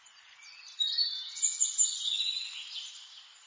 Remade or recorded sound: recorded